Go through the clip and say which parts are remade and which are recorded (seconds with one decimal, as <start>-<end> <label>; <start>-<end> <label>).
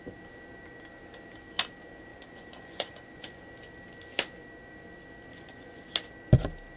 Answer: 0.0-2.1 recorded; 2.1-3.4 remade; 3.4-5.3 recorded; 5.3-5.9 remade; 5.9-6.8 recorded